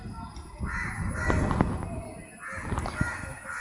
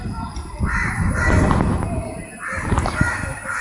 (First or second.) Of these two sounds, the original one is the first